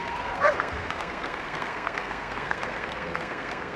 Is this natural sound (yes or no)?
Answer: no